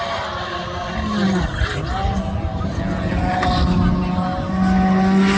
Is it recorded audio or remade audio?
recorded